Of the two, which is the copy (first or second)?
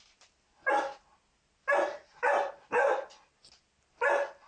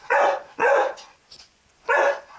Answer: second